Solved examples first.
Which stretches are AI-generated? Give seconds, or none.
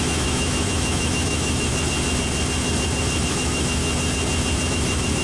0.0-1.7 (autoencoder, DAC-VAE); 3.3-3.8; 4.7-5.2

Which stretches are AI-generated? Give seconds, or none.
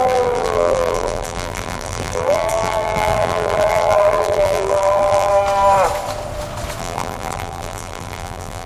0.0-5.3 (vocoder, BigVGAN v2); 6.8-8.7